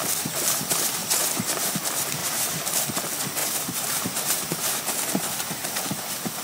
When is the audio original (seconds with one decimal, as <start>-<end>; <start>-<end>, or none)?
0.0-1.0; 1.6-2.2; 2.7-3.4; 4.8-6.4